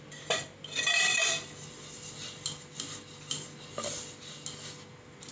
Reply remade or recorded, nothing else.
recorded